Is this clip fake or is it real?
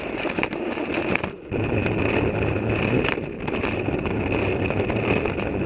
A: real